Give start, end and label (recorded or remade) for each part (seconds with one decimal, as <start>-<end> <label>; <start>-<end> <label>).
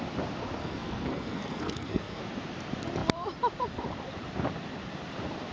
0.0-0.6 recorded; 0.6-2.2 remade; 2.2-5.5 recorded